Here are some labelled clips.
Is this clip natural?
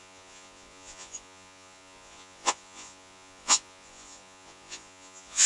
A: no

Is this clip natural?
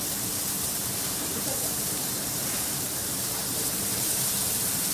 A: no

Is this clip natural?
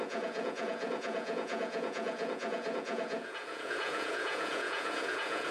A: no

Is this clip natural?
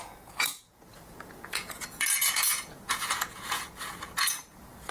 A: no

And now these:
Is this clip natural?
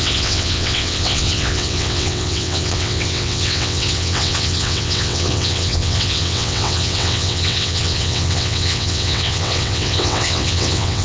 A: no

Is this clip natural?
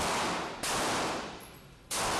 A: yes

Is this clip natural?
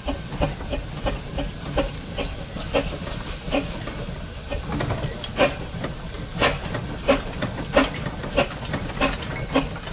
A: yes